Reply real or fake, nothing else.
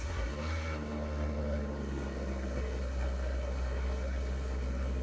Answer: fake